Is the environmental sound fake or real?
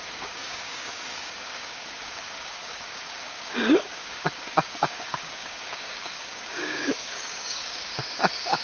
fake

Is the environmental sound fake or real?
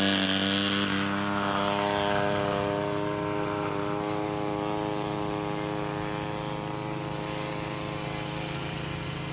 real